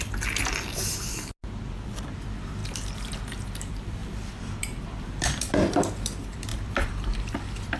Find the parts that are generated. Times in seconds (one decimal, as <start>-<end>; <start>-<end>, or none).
0.0-0.9; 1.6-2.6; 3.6-7.8